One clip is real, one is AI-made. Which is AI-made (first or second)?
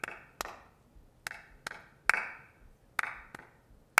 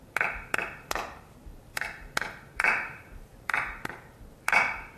second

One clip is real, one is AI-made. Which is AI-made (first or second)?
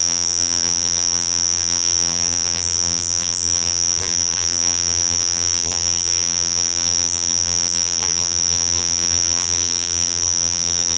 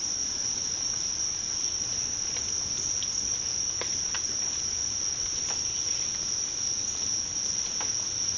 first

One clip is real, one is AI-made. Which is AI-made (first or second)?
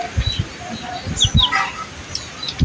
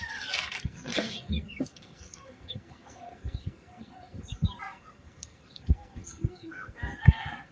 second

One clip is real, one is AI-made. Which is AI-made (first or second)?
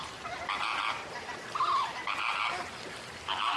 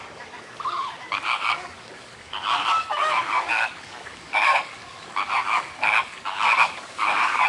second